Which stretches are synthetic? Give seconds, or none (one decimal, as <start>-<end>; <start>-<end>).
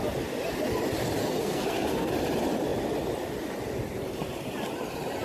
1.2-2.1